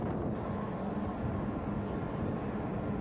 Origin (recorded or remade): recorded